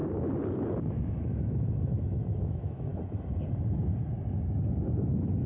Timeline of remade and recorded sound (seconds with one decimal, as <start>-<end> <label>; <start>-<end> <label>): 0.0-0.9 recorded; 0.9-2.9 remade; 2.9-5.5 recorded